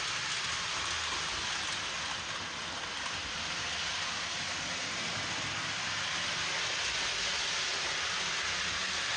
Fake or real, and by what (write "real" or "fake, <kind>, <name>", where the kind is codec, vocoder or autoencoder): real